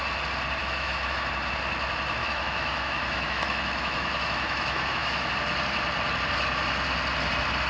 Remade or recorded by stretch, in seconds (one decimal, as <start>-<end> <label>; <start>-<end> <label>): 0.0-0.6 recorded; 0.6-1.3 remade; 1.3-2.2 recorded; 2.2-5.3 remade; 5.3-7.7 recorded